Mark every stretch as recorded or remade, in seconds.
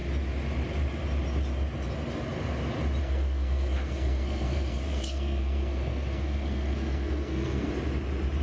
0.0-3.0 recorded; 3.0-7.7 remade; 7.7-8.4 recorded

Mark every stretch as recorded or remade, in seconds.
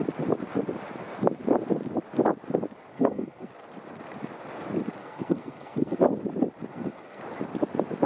0.0-2.9 recorded; 2.9-3.5 remade; 3.5-5.0 recorded; 5.0-6.0 remade; 6.0-6.7 recorded; 6.7-7.2 remade; 7.2-8.1 recorded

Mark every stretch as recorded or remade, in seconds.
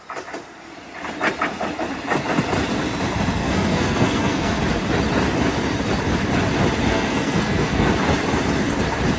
0.0-3.4 recorded; 3.4-4.6 remade; 4.6-6.9 recorded; 6.9-7.9 remade; 7.9-9.2 recorded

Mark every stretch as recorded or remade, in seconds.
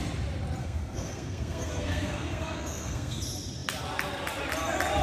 0.0-0.6 recorded; 0.6-3.2 remade; 3.2-5.0 recorded